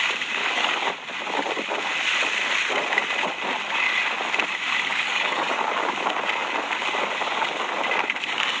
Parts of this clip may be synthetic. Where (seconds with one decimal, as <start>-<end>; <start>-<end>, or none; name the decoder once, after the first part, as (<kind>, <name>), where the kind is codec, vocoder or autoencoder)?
0.4-0.9 (codec, DAC); 4.9-5.5